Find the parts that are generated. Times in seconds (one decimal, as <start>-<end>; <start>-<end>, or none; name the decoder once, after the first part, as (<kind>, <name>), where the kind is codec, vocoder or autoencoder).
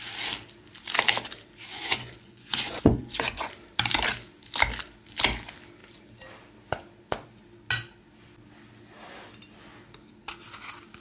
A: 1.7-3.5 (vocoder, Vocos)